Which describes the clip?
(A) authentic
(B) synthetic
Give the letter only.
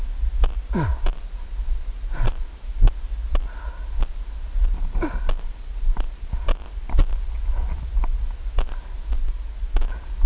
A